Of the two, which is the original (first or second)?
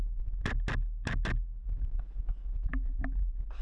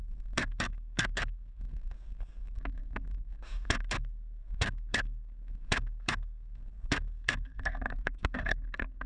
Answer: first